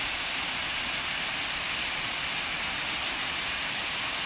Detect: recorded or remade recorded